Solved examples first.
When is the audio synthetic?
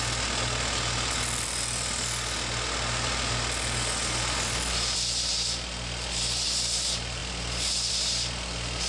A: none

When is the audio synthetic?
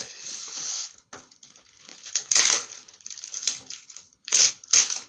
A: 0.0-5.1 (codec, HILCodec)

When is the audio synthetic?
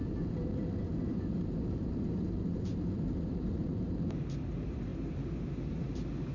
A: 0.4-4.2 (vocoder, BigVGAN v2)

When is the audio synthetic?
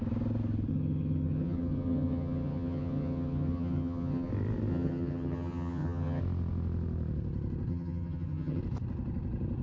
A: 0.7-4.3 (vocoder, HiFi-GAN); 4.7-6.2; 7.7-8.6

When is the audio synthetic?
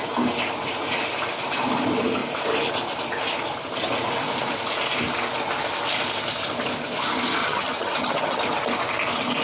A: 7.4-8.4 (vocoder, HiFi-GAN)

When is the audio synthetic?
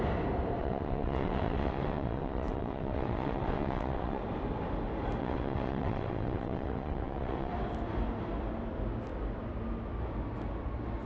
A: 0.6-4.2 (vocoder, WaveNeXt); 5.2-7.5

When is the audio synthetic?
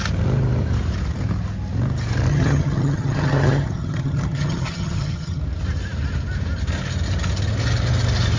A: 2.3-5.4 (vocoder, HiFi-GAN)